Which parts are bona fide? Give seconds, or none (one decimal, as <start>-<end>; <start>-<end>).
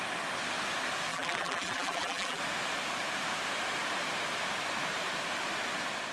0.0-1.1; 2.4-6.1